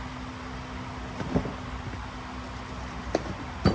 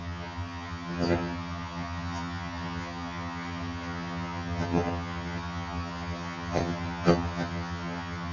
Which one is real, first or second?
first